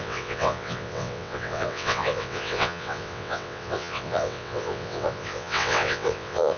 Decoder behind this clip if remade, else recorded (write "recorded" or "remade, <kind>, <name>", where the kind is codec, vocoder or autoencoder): remade, vocoder, WaveNeXt